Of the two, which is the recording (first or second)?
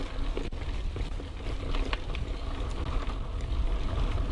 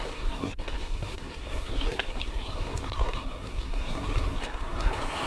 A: first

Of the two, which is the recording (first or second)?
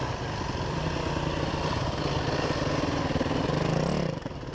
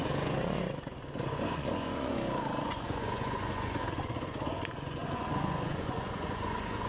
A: first